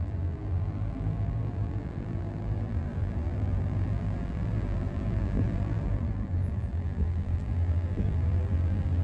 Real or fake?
fake